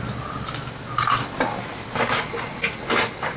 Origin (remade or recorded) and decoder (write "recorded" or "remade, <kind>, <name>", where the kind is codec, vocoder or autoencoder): recorded